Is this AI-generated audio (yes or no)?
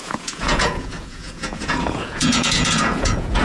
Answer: yes